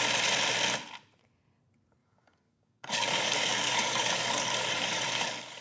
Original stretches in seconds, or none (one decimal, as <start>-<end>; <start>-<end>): 0.0-2.0